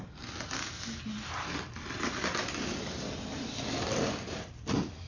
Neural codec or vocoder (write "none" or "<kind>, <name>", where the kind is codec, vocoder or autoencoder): none